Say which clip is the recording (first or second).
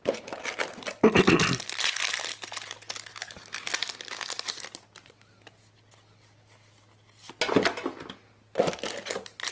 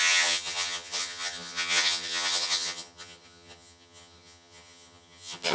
first